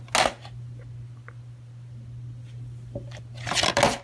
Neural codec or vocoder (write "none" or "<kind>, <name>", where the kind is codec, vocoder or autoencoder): none